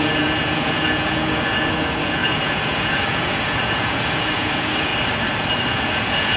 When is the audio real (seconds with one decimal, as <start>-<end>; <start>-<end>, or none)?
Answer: 4.9-5.7